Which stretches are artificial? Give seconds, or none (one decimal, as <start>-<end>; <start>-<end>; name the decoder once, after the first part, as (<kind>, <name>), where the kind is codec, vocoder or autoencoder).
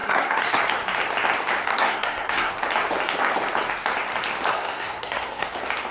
0.0-0.6 (codec, SNAC); 1.7-2.5; 4.5-5.5